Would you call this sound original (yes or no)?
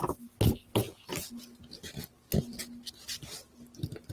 yes